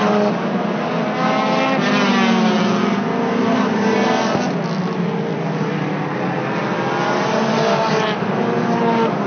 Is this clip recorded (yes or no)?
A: yes